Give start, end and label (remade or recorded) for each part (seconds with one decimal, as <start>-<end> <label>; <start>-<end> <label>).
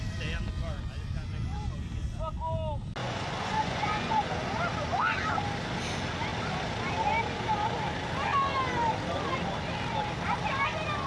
0.0-3.0 recorded; 3.0-4.3 remade; 4.3-11.1 recorded